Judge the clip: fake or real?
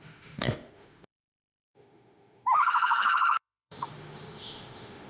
fake